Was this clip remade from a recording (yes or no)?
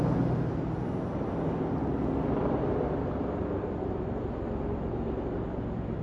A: no